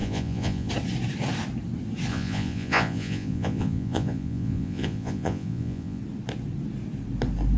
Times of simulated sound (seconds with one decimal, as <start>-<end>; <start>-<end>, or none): 0.0-0.7; 2.1-6.0